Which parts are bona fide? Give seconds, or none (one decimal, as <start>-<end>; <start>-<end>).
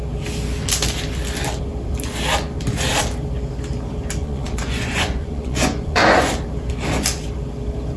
0.0-4.2; 6.3-8.0